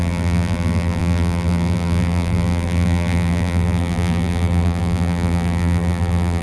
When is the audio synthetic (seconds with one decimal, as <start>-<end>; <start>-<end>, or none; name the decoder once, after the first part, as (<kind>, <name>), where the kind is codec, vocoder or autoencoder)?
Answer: 0.0-6.4 (vocoder, BigVGAN v2)